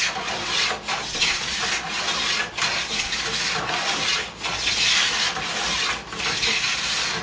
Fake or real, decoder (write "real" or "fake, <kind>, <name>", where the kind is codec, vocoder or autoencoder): real